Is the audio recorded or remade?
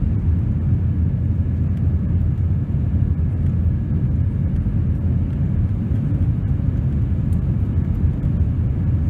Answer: recorded